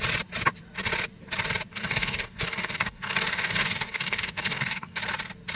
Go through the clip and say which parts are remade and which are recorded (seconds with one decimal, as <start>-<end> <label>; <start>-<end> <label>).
0.0-1.7 recorded; 1.7-5.0 remade; 5.0-5.6 recorded